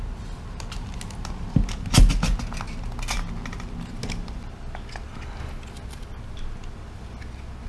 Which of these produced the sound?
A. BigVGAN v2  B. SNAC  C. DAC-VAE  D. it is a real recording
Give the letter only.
D